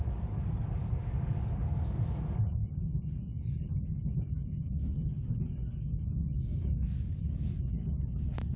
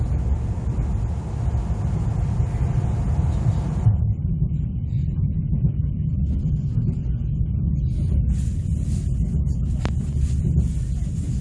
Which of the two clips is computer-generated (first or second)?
first